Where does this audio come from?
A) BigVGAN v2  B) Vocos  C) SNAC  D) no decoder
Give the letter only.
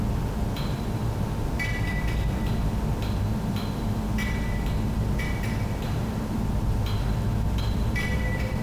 A